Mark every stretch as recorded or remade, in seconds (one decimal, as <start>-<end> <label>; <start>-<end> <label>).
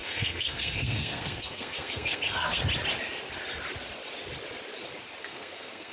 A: 0.0-2.6 remade; 2.6-5.2 recorded; 5.2-5.9 remade